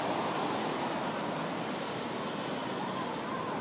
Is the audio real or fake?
real